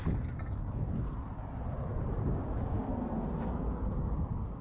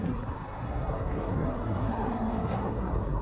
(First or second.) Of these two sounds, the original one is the first